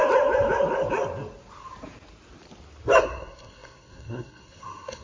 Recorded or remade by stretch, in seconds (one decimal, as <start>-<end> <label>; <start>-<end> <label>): 0.0-3.0 recorded; 3.0-5.0 remade